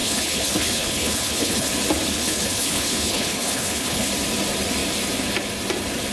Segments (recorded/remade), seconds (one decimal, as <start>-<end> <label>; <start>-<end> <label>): 0.0-1.7 remade; 1.7-2.1 recorded; 2.1-4.1 remade; 4.1-6.1 recorded